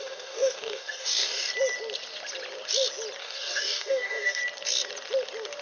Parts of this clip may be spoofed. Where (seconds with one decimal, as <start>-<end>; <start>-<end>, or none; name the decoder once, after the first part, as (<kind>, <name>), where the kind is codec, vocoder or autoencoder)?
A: 0.0-1.5 (codec, DAC); 3.2-4.4